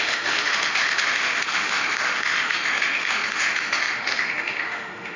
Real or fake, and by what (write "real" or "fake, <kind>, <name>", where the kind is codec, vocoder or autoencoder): fake, autoencoder, DAC-VAE